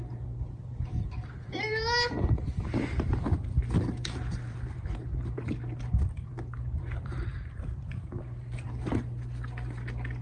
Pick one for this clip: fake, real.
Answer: real